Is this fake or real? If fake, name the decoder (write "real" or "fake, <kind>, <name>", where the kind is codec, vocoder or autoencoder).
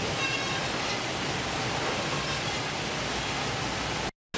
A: real